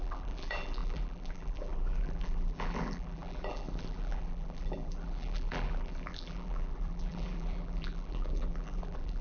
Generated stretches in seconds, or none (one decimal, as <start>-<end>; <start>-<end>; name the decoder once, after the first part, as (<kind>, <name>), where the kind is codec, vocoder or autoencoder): 0.0-9.2 (vocoder, BigVGAN v2)